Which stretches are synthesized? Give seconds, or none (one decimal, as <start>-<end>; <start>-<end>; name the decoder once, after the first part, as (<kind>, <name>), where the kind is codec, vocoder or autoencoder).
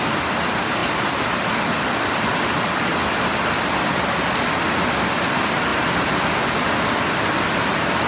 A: none